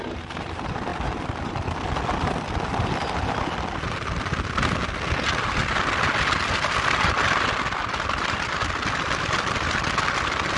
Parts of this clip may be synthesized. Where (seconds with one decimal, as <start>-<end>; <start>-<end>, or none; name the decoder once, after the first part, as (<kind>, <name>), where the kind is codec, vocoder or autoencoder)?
none